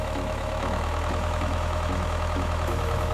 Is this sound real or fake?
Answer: fake